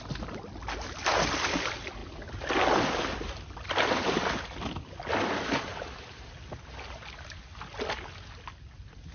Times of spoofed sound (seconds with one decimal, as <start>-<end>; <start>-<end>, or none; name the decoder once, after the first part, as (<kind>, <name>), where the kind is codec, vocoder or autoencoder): none